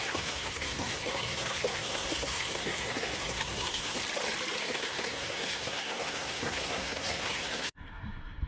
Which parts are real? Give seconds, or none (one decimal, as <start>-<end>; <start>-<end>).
4.0-4.6